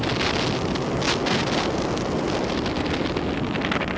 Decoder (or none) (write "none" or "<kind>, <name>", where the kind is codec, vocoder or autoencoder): none